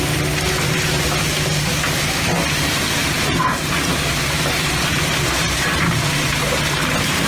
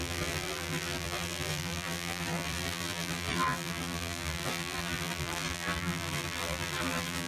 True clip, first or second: first